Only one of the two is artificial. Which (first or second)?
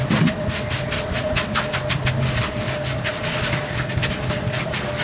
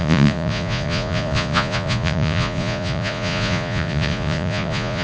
second